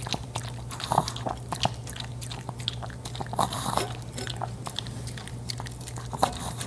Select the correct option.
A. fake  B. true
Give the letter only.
B